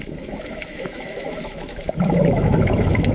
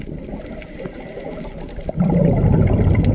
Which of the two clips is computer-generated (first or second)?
first